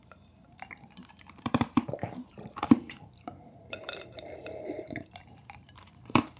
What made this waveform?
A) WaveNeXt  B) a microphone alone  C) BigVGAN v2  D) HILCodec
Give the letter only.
C